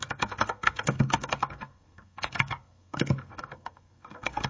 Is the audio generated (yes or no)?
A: yes